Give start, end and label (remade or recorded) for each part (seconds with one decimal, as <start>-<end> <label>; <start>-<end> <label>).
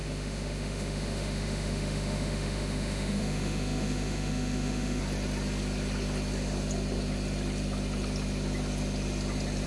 0.0-5.0 remade; 5.0-9.7 recorded